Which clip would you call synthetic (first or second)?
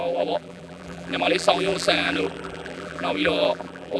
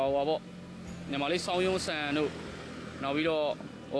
first